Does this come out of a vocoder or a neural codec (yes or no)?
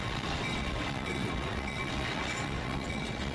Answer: yes